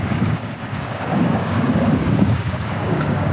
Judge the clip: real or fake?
fake